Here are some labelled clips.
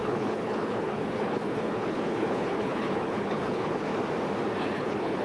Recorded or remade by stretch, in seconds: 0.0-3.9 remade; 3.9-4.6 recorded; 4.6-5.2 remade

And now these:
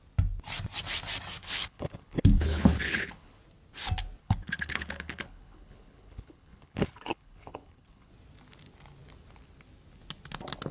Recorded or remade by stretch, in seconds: 0.0-1.4 recorded; 1.4-3.4 remade; 3.4-4.2 recorded; 4.2-8.1 remade; 8.1-10.7 recorded

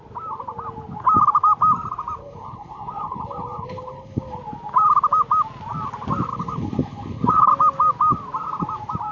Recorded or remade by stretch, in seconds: 0.0-2.2 recorded; 2.2-4.4 remade; 4.4-6.3 recorded; 6.3-7.5 remade; 7.5-9.1 recorded

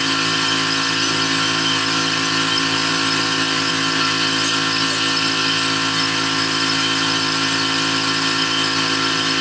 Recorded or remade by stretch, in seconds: 0.0-9.4 recorded

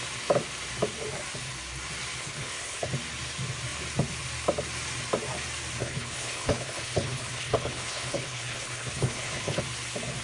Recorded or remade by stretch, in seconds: 0.0-2.2 recorded; 2.2-2.9 remade; 2.9-5.8 recorded; 5.8-9.6 remade; 9.6-10.2 recorded